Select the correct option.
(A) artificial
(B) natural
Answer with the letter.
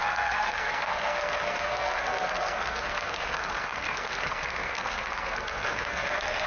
A